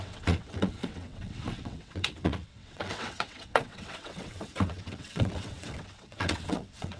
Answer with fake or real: fake